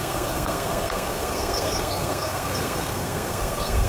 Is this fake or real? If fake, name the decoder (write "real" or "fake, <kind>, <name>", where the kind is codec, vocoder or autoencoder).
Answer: fake, codec, SNAC